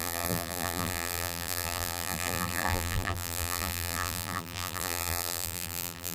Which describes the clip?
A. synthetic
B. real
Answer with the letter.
A